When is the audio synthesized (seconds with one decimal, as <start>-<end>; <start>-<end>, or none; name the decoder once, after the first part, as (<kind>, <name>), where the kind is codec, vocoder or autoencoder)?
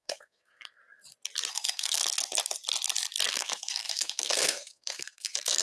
0.0-0.8 (codec, SNAC); 1.5-2.0; 3.3-5.6